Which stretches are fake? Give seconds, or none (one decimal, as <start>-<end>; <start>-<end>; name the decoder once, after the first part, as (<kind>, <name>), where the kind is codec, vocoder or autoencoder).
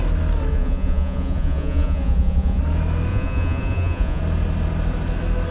0.5-2.6 (vocoder, Vocos); 3.1-4.2